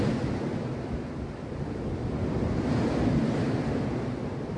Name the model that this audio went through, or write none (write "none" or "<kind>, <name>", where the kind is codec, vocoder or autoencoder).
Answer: none